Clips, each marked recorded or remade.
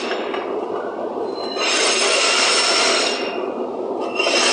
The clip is recorded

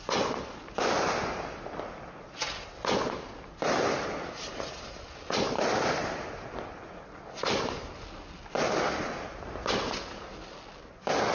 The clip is recorded